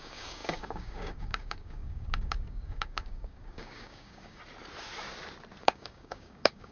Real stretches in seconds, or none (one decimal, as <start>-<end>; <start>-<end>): 4.4-5.6